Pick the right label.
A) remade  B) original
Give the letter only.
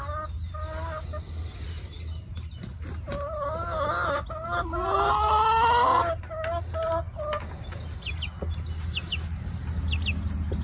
B